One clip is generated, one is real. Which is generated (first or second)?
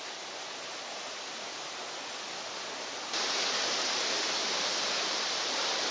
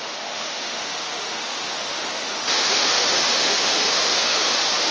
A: second